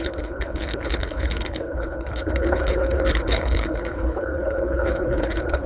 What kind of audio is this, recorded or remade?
remade